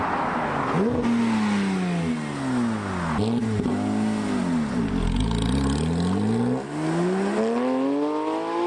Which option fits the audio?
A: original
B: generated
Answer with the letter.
A